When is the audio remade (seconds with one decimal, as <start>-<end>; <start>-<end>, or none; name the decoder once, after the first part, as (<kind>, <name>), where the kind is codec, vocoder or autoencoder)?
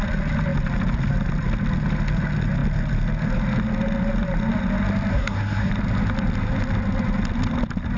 5.1-5.7 (codec, SNAC)